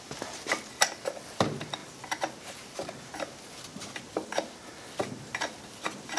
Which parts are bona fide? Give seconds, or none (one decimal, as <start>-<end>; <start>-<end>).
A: 0.0-6.2